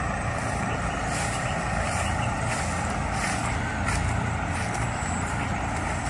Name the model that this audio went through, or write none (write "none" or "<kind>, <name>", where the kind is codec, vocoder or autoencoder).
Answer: none